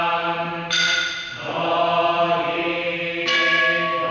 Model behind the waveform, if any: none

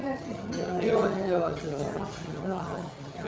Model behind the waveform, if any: vocoder, HiFi-GAN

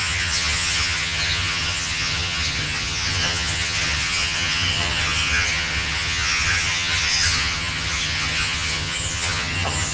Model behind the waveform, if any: vocoder, HiFi-GAN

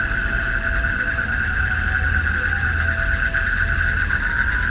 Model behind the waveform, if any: none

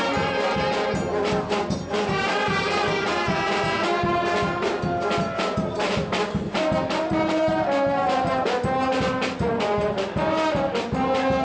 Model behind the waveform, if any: none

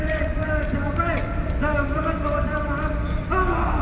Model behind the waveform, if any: none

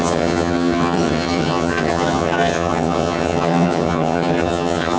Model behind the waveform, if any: vocoder, HiFi-GAN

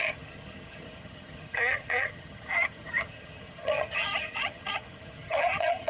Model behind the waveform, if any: vocoder, HiFi-GAN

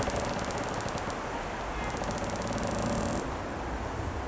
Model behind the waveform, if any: none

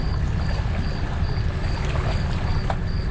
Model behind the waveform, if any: none